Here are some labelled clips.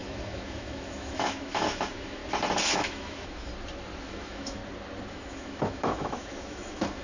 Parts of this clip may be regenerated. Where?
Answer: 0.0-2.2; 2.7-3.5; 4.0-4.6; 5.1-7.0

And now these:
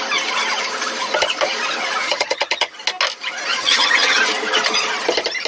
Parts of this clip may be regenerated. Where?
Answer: 2.0-2.7; 3.5-4.2

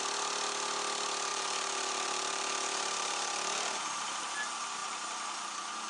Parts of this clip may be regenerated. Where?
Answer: 1.3-3.8

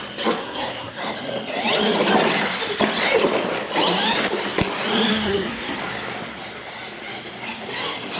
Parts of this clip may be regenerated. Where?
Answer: 0.4-1.0; 5.1-5.8

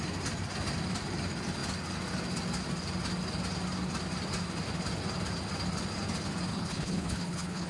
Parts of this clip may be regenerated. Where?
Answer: 6.5-7.7

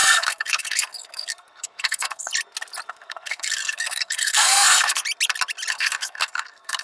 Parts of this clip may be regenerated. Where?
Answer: 0.0-2.3; 2.9-5.0; 5.7-6.8

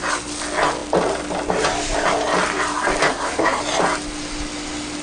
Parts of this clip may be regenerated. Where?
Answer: 3.1-3.6